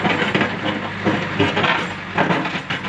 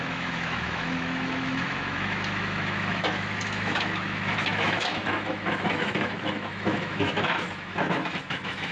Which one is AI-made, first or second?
second